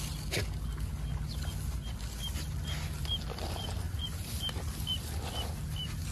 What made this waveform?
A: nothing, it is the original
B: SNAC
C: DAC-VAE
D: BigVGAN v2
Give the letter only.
A